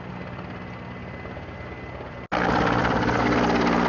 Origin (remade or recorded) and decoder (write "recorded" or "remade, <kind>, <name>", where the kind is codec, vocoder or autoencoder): recorded